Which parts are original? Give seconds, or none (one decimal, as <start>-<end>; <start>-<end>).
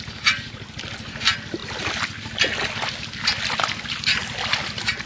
0.0-5.1